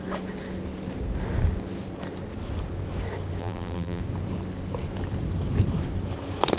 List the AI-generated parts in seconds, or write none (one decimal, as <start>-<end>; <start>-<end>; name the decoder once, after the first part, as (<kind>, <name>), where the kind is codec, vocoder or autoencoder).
3.4-4.0 (vocoder, BigVGAN v2)